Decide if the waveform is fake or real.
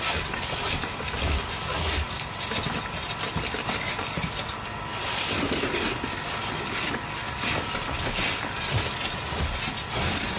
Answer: real